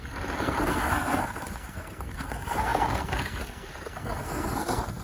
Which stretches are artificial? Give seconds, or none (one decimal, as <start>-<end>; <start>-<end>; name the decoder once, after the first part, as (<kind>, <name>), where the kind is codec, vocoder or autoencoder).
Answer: 0.0-5.0 (codec, SNAC)